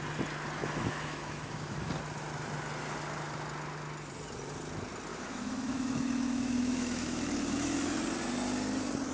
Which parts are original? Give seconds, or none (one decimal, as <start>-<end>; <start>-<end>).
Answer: 0.0-0.6; 1.9-5.1; 7.9-9.1